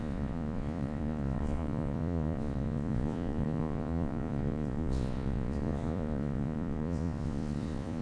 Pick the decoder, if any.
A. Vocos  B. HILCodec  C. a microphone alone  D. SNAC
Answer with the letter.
A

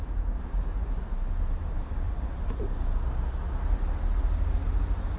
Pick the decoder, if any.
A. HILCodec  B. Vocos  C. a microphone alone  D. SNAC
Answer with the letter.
C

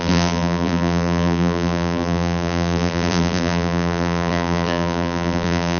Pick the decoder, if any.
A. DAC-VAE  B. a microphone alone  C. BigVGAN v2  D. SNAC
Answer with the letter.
C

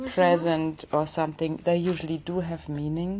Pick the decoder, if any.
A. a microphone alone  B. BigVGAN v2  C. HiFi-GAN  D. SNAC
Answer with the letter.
A